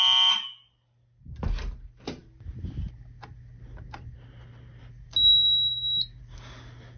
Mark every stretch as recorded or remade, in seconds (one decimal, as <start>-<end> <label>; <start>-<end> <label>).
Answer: 0.0-7.0 recorded